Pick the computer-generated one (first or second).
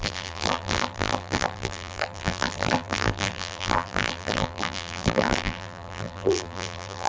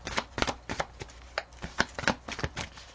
first